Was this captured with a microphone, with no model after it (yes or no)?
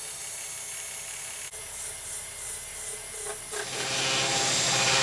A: yes